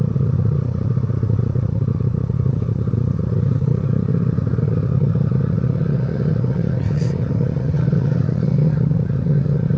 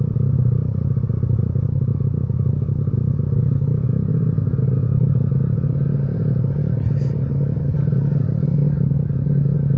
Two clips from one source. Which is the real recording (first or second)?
second